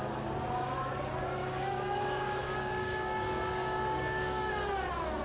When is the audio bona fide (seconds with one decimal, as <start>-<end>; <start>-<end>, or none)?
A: 0.0-1.4; 4.5-5.2